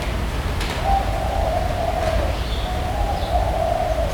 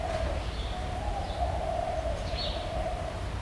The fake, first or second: second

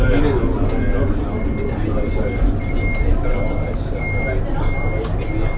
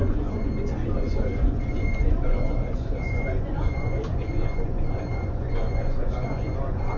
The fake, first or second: second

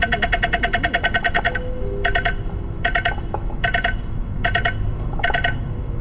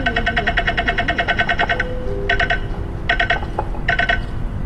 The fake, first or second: first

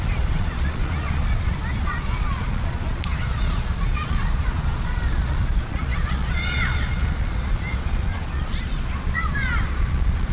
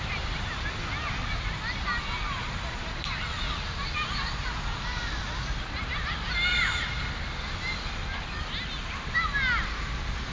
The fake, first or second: first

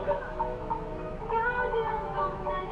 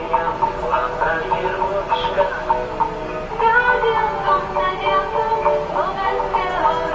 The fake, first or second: first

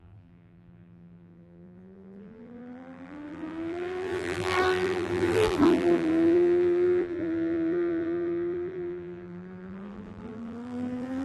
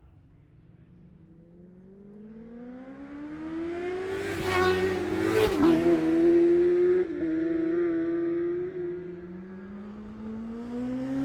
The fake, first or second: first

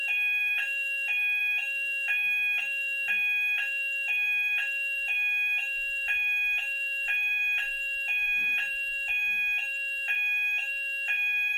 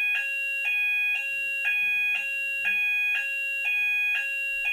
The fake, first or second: first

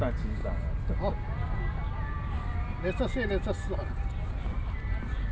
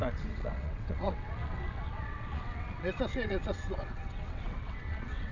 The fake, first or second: second